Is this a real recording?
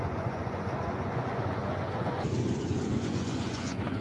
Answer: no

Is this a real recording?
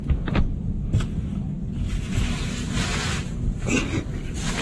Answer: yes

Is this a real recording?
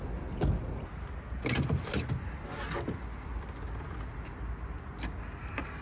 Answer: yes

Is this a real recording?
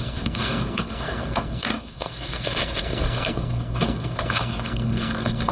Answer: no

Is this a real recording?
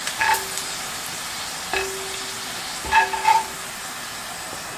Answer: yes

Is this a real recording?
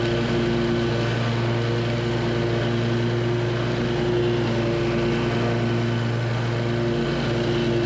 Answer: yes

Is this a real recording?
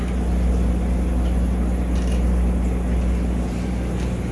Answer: yes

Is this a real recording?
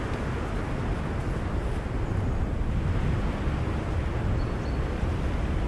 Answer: yes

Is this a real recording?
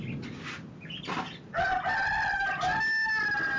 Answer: yes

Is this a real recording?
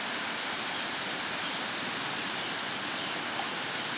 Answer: yes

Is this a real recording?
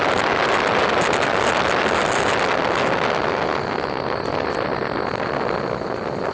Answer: yes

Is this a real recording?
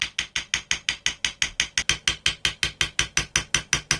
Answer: yes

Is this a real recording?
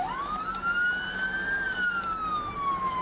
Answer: yes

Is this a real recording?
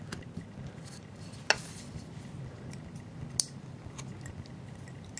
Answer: yes